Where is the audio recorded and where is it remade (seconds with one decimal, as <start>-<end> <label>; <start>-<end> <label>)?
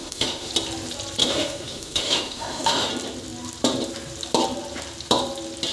0.0-0.5 remade; 0.5-1.2 recorded; 1.2-2.9 remade; 2.9-5.7 recorded